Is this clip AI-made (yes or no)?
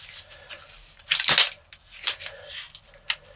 no